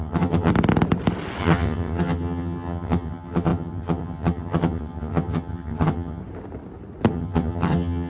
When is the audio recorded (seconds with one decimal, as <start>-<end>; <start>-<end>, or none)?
0.5-1.4; 6.2-7.1